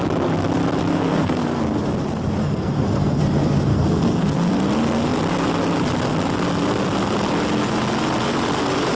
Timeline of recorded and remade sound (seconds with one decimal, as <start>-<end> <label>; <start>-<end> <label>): 0.0-0.9 recorded; 0.9-1.6 remade; 1.6-2.4 recorded; 2.4-3.2 remade; 3.2-3.7 recorded; 3.7-4.5 remade; 4.5-8.9 recorded